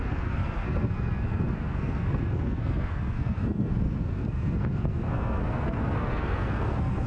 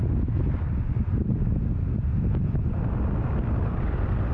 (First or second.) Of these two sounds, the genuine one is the second